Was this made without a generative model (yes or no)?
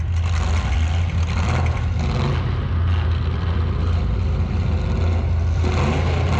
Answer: yes